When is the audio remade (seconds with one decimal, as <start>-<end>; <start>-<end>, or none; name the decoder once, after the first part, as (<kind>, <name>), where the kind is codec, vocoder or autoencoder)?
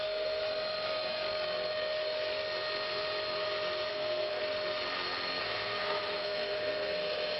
0.0-0.4 (codec, SNAC); 3.9-4.4; 5.4-7.4